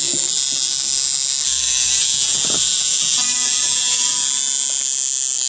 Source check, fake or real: real